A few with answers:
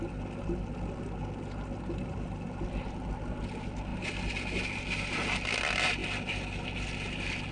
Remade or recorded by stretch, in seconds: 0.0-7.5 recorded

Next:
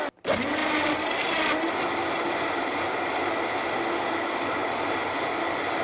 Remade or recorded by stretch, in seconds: 0.0-5.8 recorded

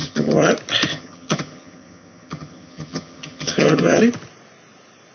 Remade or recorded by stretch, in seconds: 0.0-0.5 remade; 0.5-0.9 recorded; 0.9-4.0 remade; 4.0-5.1 recorded

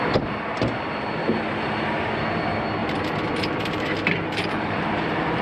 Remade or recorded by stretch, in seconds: 0.0-2.8 recorded; 2.8-5.4 remade